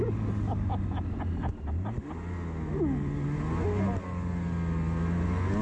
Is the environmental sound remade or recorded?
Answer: recorded